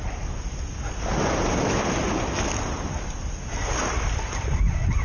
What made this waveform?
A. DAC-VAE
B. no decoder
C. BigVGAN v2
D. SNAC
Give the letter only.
B